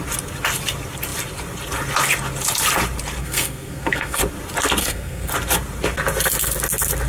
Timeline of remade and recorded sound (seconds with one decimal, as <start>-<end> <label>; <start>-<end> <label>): 0.0-3.2 recorded; 3.2-4.2 remade; 4.2-4.8 recorded; 4.8-5.3 remade; 5.3-7.1 recorded